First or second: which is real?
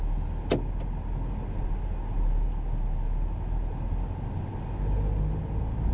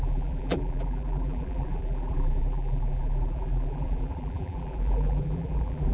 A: first